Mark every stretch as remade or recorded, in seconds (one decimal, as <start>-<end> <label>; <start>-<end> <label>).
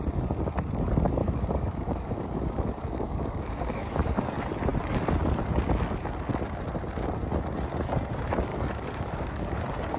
0.0-1.2 recorded; 1.2-4.2 remade; 4.2-8.5 recorded; 8.5-9.6 remade; 9.6-10.0 recorded